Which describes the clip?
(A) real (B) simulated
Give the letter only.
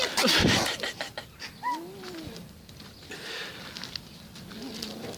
A